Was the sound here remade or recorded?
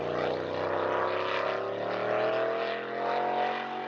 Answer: recorded